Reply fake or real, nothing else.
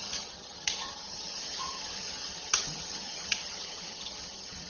fake